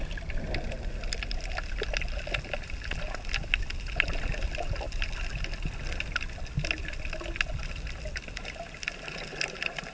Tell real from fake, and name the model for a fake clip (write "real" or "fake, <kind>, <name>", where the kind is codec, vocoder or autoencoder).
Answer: real